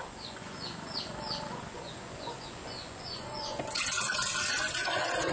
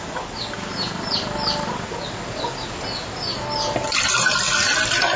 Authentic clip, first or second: second